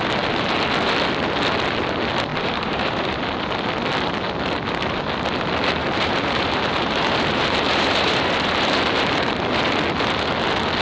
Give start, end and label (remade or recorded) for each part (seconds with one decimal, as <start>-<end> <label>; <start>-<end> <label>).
0.0-2.3 recorded; 2.3-3.2 remade; 3.2-5.8 recorded; 5.8-9.6 remade; 9.6-10.8 recorded